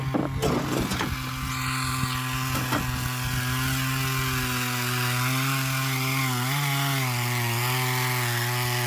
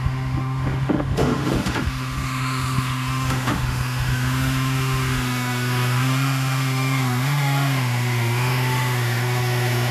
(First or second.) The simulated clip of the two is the second